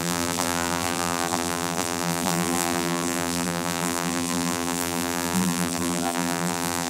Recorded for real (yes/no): no